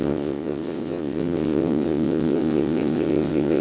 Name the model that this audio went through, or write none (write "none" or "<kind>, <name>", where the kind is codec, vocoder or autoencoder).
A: vocoder, WaveNeXt